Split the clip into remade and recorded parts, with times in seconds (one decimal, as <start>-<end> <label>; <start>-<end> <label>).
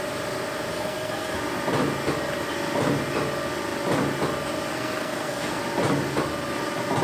0.0-0.7 recorded; 0.7-1.4 remade; 1.4-4.7 recorded; 4.7-5.6 remade; 5.6-7.0 recorded